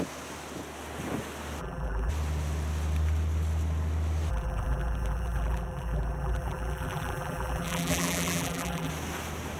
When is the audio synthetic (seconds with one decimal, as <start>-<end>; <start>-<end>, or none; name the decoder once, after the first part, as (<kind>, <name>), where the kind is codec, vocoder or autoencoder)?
1.6-2.1 (vocoder, BigVGAN v2); 4.3-8.9

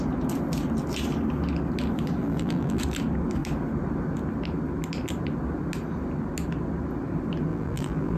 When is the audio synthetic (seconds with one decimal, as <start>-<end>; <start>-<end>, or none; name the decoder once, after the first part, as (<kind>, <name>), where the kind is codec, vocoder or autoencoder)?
2.2-2.8 (vocoder, BigVGAN v2); 7.5-8.2

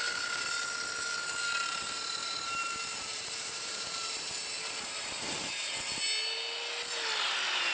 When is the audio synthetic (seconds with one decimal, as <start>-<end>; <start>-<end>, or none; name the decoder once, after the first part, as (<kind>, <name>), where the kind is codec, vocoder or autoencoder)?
2.2-5.7 (vocoder, BigVGAN v2)

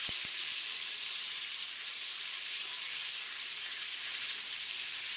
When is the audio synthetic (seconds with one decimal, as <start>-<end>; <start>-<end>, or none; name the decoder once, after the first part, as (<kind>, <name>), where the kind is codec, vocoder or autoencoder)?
0.0-1.9 (vocoder, BigVGAN v2); 2.6-5.2

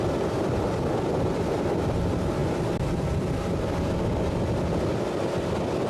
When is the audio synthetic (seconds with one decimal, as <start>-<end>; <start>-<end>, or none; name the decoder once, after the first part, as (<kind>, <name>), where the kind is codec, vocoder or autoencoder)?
none